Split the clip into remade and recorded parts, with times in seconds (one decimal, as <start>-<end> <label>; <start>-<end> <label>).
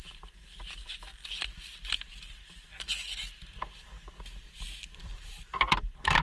0.0-6.2 recorded